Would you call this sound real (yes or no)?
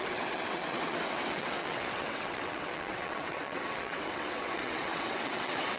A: no